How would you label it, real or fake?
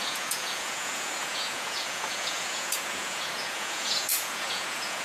fake